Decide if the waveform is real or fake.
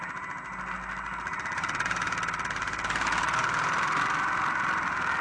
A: real